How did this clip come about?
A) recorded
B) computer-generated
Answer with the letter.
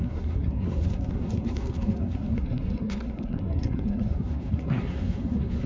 B